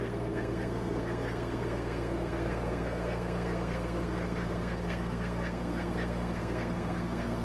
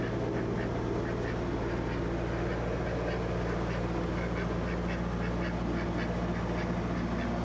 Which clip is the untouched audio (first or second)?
second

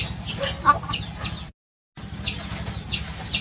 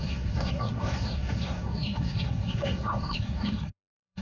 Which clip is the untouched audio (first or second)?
first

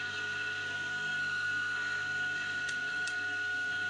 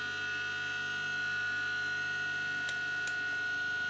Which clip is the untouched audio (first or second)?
second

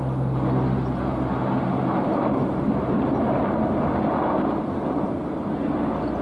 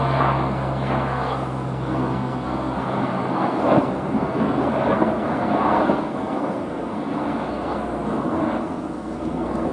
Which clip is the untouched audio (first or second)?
first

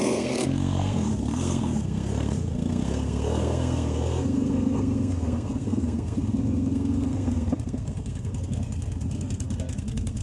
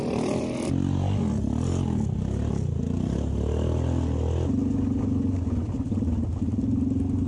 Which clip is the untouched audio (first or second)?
second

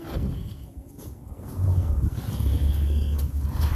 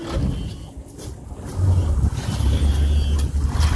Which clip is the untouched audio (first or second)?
second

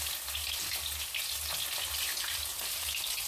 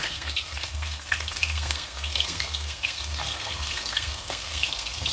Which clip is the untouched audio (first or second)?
first